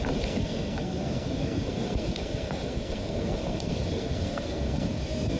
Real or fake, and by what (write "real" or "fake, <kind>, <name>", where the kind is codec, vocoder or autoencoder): fake, codec, SNAC